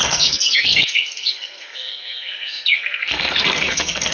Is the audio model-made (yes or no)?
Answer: yes